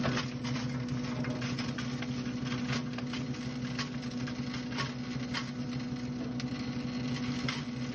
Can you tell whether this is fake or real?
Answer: real